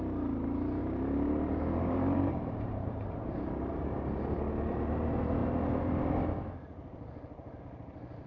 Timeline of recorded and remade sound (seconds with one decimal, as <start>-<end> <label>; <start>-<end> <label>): 0.0-0.8 recorded; 0.8-3.7 remade; 3.7-8.3 recorded